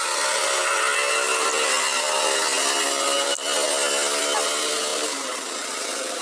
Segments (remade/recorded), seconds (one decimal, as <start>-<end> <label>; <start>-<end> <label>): 0.0-4.9 recorded; 4.9-6.2 remade